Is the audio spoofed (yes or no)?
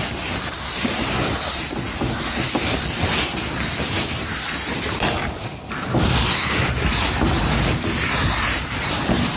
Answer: no